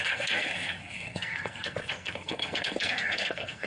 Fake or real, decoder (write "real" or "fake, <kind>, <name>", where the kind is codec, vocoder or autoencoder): fake, codec, SNAC